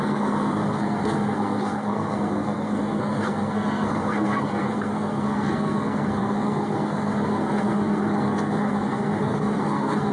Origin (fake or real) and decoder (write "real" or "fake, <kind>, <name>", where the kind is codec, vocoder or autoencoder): fake, codec, SNAC